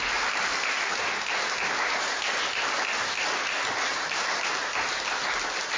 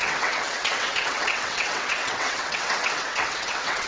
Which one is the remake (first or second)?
second